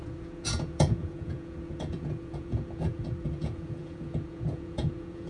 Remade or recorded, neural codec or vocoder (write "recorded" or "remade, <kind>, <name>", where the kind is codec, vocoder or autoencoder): remade, vocoder, Vocos